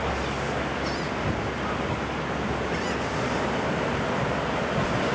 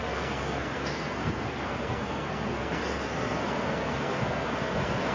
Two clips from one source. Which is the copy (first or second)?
second